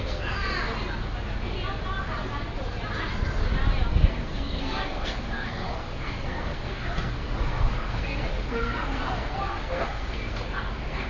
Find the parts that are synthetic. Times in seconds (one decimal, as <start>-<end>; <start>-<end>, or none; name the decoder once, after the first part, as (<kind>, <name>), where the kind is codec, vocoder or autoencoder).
0.0-0.5 (codec, SNAC); 3.9-11.1

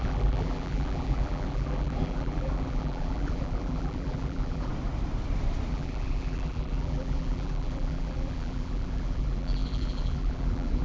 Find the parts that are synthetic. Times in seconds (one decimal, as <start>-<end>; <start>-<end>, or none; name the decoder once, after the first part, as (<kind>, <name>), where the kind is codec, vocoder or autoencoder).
0.0-4.7 (vocoder, BigVGAN v2); 5.7-10.8

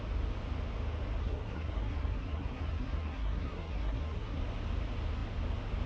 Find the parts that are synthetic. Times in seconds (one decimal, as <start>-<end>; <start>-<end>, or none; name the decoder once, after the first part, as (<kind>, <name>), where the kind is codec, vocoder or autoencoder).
1.2-4.4 (codec, SNAC)

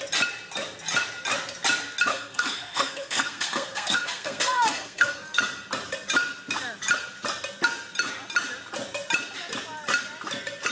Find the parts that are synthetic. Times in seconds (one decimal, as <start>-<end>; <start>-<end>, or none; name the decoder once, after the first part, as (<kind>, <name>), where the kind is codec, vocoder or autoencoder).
2.1-5.4 (codec, SNAC)

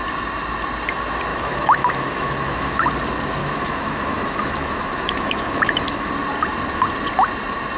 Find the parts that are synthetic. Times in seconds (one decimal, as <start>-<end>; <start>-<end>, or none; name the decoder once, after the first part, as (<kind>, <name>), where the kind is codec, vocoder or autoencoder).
1.3-2.9 (autoencoder, DAC-VAE); 3.4-6.1

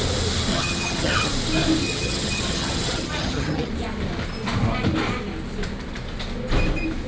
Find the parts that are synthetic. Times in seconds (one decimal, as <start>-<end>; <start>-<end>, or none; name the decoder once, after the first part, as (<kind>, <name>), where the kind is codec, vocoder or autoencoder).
0.5-1.3 (vocoder, HiFi-GAN); 1.8-3.7

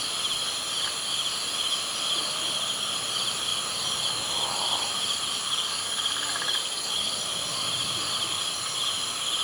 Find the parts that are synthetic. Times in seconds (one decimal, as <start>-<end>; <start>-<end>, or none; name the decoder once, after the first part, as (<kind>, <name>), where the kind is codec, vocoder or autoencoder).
5.4-7.1 (codec, DAC)

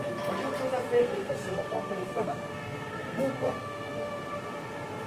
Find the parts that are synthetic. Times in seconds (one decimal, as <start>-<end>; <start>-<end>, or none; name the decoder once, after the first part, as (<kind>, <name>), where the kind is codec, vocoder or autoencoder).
1.0-4.1 (codec, SNAC)